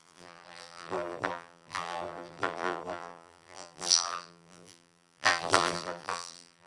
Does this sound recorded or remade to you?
remade